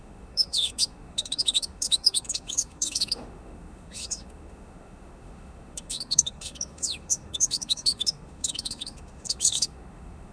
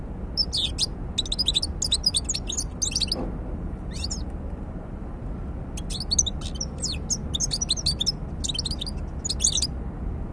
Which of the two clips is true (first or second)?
second